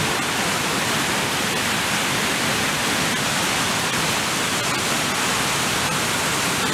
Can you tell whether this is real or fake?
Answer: real